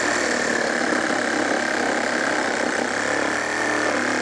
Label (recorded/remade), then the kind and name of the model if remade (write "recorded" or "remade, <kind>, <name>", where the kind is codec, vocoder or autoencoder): recorded